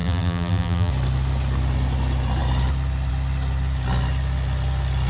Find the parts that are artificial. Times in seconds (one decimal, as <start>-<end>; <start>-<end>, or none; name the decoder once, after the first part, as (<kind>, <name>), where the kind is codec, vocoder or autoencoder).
0.0-0.9 (vocoder, BigVGAN v2)